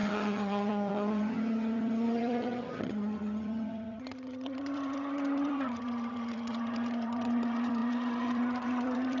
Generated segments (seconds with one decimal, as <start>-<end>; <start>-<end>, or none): 0.0-9.2